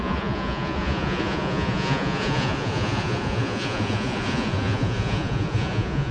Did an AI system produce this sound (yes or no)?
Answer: yes